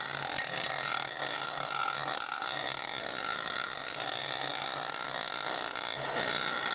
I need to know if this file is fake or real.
real